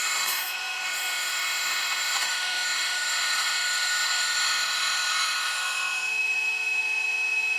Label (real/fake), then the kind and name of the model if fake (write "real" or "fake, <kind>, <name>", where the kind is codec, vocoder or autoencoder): fake, autoencoder, DAC-VAE